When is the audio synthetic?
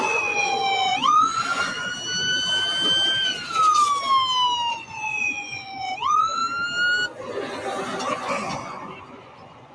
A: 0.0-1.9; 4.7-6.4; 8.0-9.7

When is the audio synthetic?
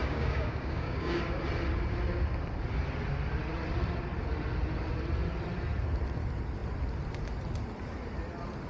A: 0.0-1.2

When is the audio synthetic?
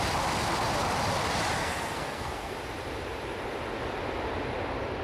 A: 1.6-2.5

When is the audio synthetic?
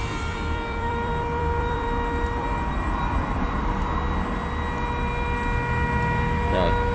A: 0.0-3.7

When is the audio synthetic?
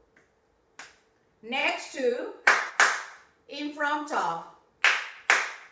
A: 1.6-2.7; 3.5-4.7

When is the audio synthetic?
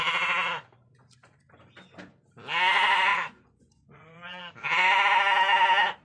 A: 3.1-4.5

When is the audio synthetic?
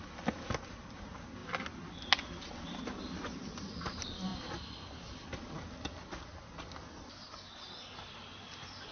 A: none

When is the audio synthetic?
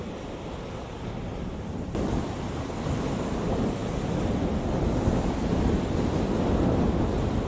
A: none